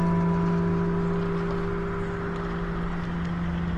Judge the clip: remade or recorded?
recorded